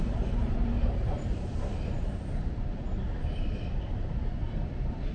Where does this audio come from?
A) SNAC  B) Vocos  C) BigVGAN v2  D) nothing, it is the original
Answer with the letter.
D